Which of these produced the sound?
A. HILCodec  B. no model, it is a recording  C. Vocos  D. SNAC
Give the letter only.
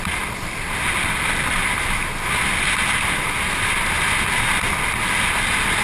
B